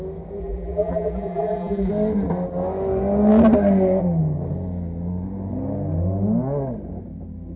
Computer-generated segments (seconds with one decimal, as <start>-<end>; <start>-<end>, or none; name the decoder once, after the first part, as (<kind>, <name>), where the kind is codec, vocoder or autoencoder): 0.4-1.9 (vocoder, BigVGAN v2)